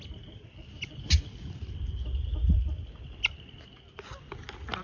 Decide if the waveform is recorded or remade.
recorded